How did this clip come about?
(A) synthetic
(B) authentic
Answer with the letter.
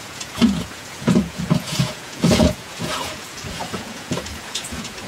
A